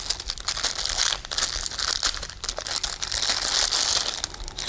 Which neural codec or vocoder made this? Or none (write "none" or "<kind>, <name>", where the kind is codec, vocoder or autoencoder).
none